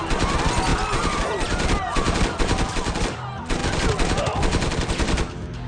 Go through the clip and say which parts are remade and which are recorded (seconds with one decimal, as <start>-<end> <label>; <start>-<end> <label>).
0.0-5.7 recorded